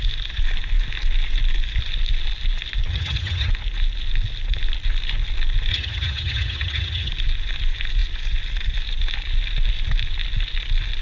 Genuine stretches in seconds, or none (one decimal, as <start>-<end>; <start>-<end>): 0.0-2.9; 3.5-5.7; 7.1-11.0